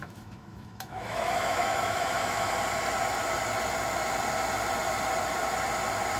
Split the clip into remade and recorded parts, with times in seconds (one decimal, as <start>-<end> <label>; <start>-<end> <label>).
0.0-2.5 remade; 2.5-6.2 recorded